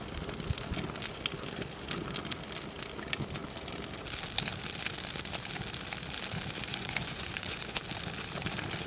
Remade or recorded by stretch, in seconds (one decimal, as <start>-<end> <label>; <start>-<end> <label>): 0.0-6.7 recorded; 6.7-7.8 remade; 7.8-8.9 recorded